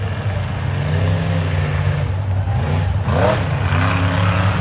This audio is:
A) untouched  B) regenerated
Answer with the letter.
A